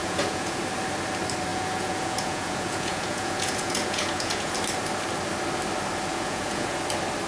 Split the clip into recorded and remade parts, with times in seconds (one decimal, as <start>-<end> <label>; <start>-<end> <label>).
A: 0.0-0.6 remade; 0.6-1.5 recorded; 1.5-4.5 remade; 4.5-6.1 recorded; 6.1-6.8 remade; 6.8-7.3 recorded